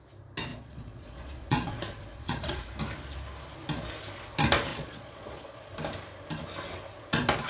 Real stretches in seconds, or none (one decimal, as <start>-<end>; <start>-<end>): 0.0-0.5; 2.7-4.7; 5.7-7.5